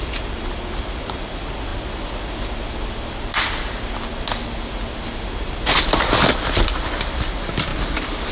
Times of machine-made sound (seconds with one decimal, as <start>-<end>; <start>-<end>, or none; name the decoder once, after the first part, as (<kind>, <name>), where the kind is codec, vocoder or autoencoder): none